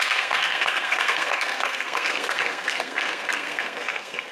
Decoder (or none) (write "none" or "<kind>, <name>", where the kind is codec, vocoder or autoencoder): codec, SNAC